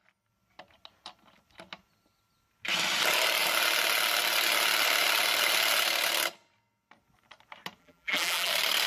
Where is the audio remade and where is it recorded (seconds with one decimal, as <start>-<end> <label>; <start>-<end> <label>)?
0.0-7.8 recorded; 7.8-8.5 remade; 8.5-8.9 recorded